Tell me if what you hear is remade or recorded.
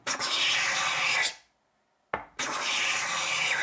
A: recorded